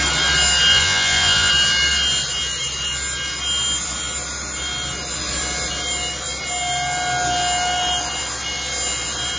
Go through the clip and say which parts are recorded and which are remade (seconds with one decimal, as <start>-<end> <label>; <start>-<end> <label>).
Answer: 0.0-0.7 recorded; 0.7-1.5 remade; 1.5-9.4 recorded